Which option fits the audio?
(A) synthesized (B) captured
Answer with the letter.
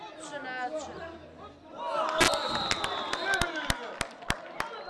B